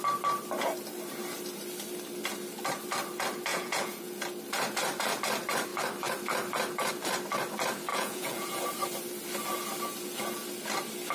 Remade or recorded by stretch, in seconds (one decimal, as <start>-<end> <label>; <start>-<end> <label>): 0.0-3.5 recorded; 3.5-4.2 remade; 4.2-7.9 recorded; 7.9-8.6 remade; 8.6-11.1 recorded

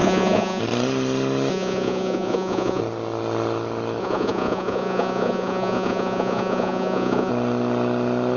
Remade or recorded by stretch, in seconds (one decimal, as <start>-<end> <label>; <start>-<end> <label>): 0.0-0.6 remade; 0.6-1.5 recorded; 1.5-2.8 remade; 2.8-4.0 recorded; 4.0-7.3 remade; 7.3-8.4 recorded

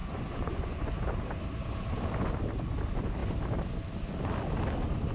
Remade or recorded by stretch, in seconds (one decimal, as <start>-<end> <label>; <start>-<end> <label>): 0.0-0.9 remade; 0.9-5.1 recorded

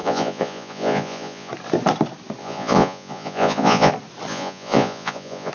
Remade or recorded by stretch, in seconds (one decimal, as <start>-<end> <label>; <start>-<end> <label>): 0.0-1.5 remade; 1.5-2.4 recorded; 2.4-3.9 remade; 3.9-4.3 recorded; 4.3-5.5 remade

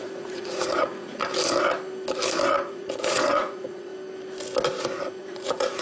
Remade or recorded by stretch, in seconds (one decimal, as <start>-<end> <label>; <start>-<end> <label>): 0.0-1.2 remade; 1.2-2.6 recorded; 2.6-3.9 remade; 3.9-5.2 recorded; 5.2-5.8 remade

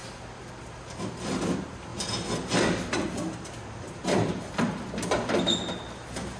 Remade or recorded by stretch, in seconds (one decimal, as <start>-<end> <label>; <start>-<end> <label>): 0.0-6.4 recorded

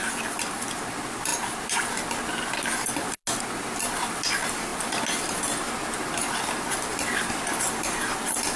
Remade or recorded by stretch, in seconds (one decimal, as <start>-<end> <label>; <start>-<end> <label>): 0.0-8.6 recorded